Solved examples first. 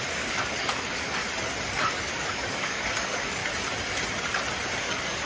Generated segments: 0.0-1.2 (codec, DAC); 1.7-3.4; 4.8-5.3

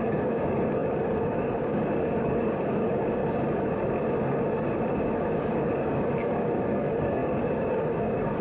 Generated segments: 0.0-3.2 (codec, DAC); 5.0-8.4

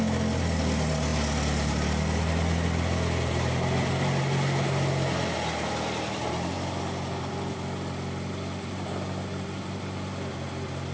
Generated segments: none